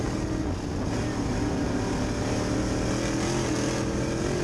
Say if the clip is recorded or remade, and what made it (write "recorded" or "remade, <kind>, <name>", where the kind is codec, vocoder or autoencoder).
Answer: recorded